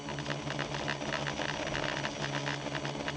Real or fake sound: real